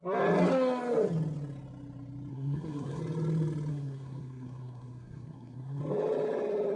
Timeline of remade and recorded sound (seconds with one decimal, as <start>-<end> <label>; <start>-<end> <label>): 0.0-2.3 recorded; 2.3-3.0 remade; 3.0-3.7 recorded; 3.7-5.8 remade; 5.8-6.8 recorded